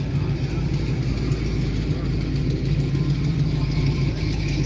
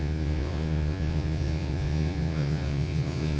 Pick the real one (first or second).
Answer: first